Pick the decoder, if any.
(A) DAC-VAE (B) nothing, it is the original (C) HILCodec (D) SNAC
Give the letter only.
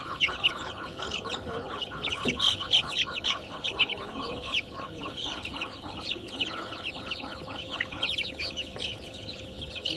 C